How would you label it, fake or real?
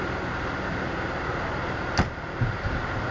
real